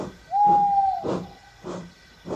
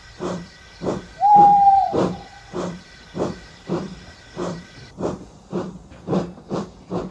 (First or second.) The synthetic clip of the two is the second